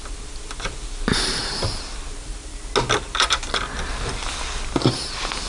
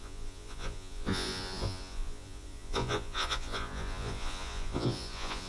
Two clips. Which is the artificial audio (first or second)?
second